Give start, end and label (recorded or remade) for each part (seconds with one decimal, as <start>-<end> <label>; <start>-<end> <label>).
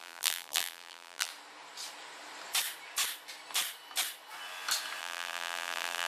0.0-1.3 remade; 1.3-5.0 recorded; 5.0-6.1 remade